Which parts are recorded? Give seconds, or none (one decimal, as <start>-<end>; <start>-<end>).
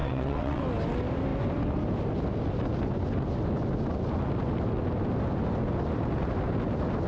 0.6-7.1